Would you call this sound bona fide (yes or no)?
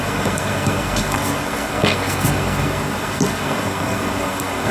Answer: no